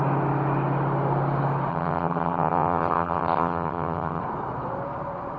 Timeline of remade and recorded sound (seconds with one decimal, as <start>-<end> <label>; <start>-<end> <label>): 0.0-1.7 recorded; 1.7-4.2 remade; 4.2-5.4 recorded